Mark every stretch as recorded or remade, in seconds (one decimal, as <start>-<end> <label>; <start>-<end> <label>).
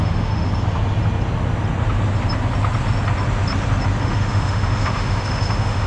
0.0-0.5 remade; 0.5-4.0 recorded; 4.0-5.9 remade